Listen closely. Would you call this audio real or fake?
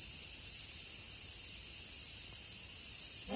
fake